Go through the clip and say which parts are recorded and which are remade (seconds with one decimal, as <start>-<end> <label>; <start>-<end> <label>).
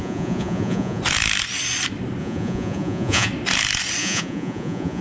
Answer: 0.0-1.0 remade; 1.0-2.2 recorded; 2.2-3.3 remade; 3.3-4.0 recorded; 4.0-5.0 remade